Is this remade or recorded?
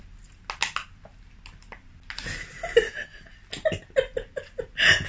recorded